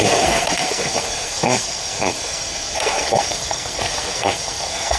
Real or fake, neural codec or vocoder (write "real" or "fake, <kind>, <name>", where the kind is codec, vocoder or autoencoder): fake, codec, SNAC